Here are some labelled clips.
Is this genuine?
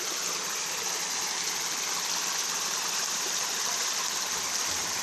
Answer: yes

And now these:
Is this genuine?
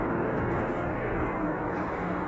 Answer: no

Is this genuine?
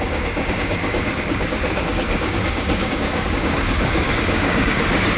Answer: no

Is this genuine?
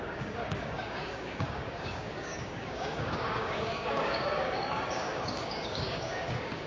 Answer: no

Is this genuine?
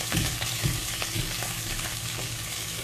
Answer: no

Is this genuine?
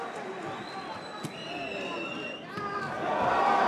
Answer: yes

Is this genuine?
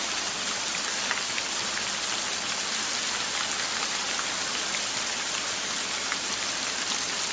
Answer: yes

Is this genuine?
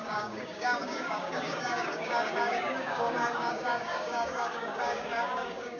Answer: no